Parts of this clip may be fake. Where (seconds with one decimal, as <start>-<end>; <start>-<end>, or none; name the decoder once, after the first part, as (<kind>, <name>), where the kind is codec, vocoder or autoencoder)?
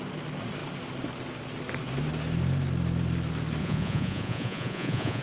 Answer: 3.6-5.2 (vocoder, Vocos)